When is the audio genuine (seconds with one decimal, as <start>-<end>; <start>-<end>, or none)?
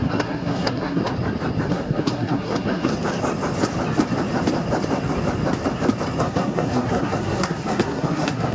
1.0-1.7; 2.9-6.2